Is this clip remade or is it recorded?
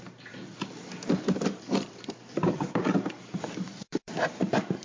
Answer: remade